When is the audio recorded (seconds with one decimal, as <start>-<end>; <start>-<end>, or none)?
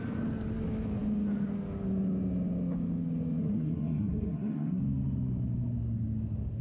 0.0-3.4; 4.8-6.6